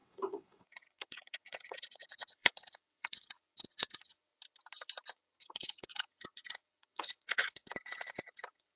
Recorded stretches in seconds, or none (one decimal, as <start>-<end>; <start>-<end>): 4.3-5.1